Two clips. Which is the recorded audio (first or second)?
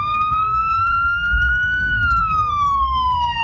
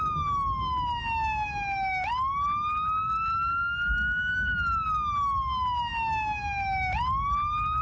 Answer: second